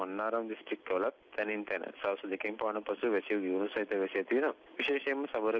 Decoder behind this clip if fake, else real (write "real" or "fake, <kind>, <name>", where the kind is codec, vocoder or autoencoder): real